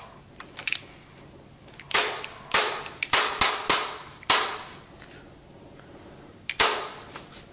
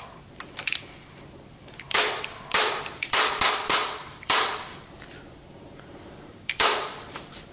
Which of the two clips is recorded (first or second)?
first